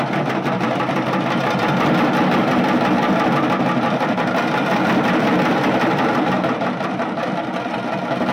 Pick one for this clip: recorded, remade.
remade